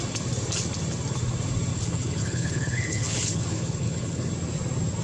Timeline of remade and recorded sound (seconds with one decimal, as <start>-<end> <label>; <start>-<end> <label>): 0.0-1.7 recorded; 1.7-4.3 remade; 4.3-5.0 recorded